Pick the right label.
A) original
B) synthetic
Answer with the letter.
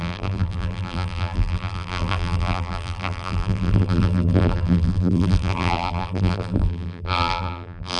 B